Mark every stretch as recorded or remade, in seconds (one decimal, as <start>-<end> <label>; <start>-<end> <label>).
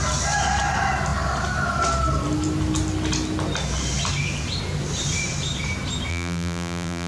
0.0-6.1 recorded; 6.1-7.1 remade